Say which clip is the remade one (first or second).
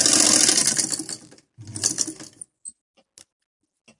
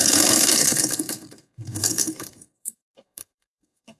second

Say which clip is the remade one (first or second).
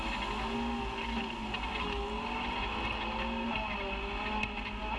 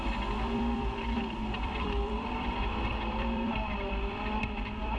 second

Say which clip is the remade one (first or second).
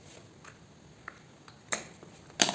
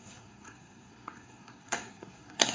second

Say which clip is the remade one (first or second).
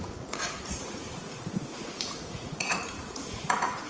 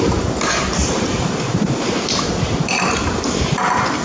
first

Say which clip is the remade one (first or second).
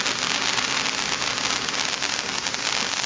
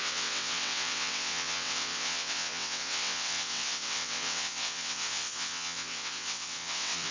second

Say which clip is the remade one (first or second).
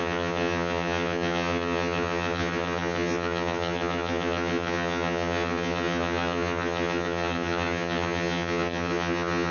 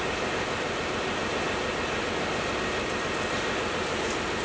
first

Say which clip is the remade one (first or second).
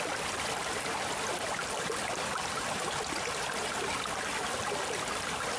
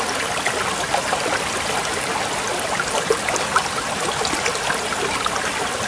first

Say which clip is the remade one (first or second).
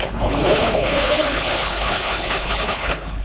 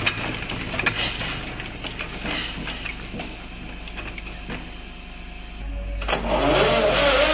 first